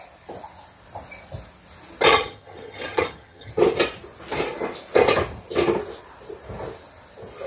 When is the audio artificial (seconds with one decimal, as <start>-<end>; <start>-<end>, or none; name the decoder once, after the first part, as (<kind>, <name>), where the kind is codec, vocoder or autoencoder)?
2.1-3.5 (vocoder, HiFi-GAN)